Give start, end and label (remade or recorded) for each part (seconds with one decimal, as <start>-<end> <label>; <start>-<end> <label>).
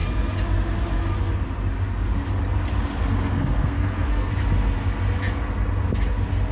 0.0-3.0 recorded; 3.0-4.3 remade; 4.3-6.5 recorded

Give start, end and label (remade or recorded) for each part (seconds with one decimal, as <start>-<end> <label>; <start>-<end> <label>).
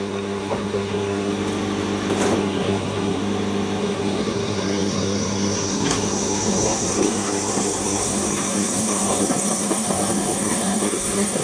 0.0-1.3 remade; 1.3-2.4 recorded; 2.4-3.2 remade; 3.2-3.8 recorded; 3.8-11.4 remade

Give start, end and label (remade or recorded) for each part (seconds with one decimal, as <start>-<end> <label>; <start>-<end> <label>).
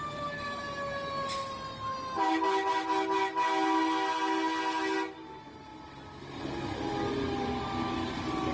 0.0-8.5 recorded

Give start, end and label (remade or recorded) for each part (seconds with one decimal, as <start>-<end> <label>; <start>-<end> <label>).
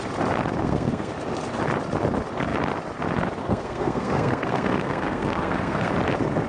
0.0-0.6 recorded; 0.6-1.1 remade; 1.1-3.4 recorded; 3.4-5.9 remade; 5.9-6.5 recorded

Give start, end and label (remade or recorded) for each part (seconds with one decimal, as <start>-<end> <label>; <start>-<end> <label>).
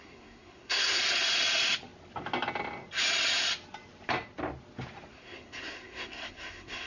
0.0-1.0 remade; 1.0-5.1 recorded; 5.1-6.9 remade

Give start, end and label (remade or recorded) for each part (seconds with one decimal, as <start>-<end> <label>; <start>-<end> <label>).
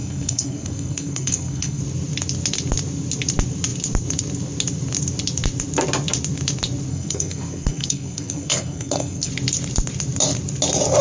0.0-1.8 remade; 1.8-6.9 recorded; 6.9-9.3 remade; 9.3-11.0 recorded